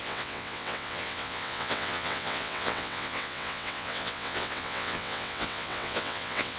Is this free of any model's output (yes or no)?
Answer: no